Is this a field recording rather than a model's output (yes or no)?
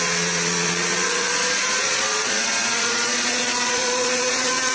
no